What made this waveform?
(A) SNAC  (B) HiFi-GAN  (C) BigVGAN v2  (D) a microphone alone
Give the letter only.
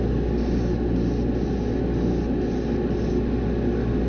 D